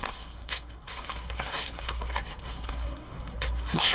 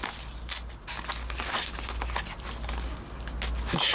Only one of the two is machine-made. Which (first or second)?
first